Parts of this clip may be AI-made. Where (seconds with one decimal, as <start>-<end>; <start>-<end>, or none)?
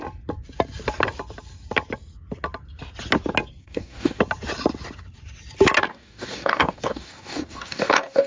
3.6-4.2; 5.9-8.3